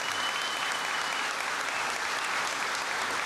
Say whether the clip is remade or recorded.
recorded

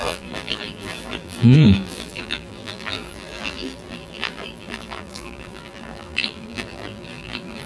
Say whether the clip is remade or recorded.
remade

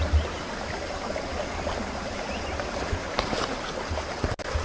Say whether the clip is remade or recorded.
recorded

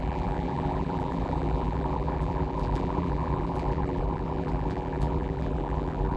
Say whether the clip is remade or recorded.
remade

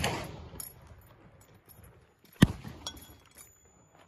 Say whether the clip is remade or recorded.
recorded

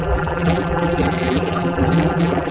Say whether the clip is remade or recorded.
remade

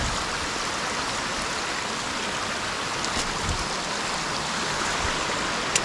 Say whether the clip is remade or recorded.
recorded